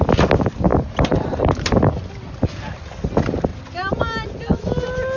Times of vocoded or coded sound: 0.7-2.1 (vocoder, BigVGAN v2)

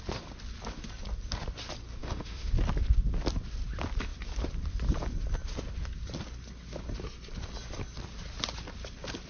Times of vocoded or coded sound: 2.0-2.5 (autoencoder, DAC-VAE)

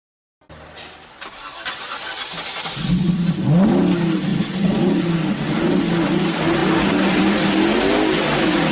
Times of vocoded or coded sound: none

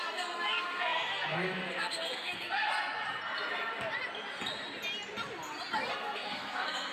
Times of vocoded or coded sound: 0.0-2.7 (codec, SNAC); 5.9-6.9

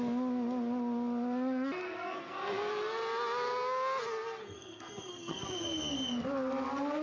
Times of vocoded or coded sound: 1.8-2.7 (codec, SNAC); 4.4-5.4

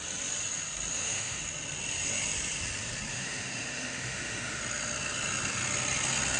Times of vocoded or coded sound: 0.9-1.4 (autoencoder, DAC-VAE); 3.1-4.6

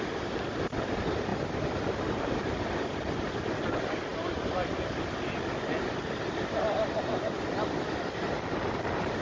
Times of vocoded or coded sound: none